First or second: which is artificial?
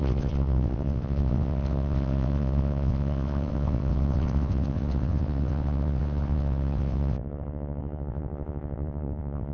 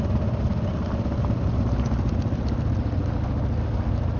first